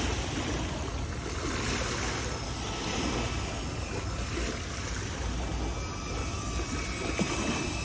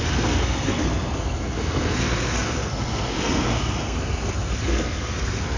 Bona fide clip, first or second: first